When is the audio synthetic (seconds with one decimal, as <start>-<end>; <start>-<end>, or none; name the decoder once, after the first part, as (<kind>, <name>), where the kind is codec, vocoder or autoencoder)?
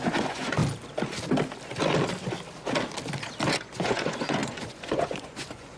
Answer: 0.0-0.6 (vocoder, Vocos); 3.6-5.8